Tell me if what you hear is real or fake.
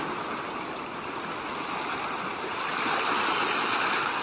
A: real